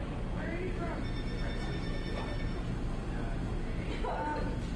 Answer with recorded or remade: recorded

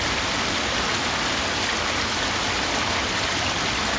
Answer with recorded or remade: recorded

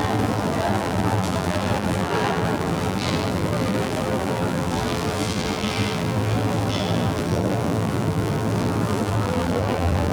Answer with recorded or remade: remade